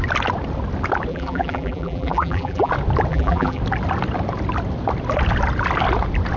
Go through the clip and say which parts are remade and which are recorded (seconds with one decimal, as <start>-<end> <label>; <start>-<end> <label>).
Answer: 0.0-1.1 recorded; 1.1-2.7 remade; 2.7-3.1 recorded; 3.1-3.6 remade; 3.6-6.4 recorded